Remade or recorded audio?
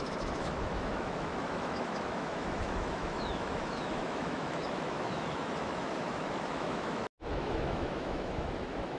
remade